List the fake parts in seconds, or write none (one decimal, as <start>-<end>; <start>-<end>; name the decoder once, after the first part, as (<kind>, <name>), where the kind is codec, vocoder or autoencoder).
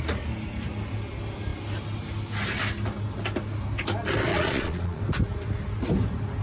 4.3-5.0 (vocoder, Vocos)